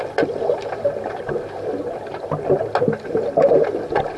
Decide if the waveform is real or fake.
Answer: real